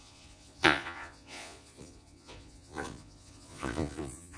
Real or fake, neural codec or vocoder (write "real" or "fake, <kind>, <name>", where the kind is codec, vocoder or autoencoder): fake, vocoder, Vocos